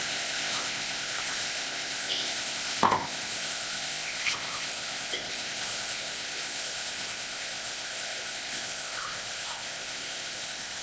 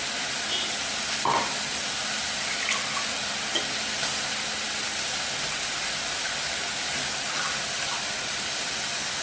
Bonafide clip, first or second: second